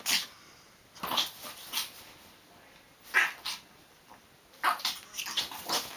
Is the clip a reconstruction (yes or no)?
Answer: no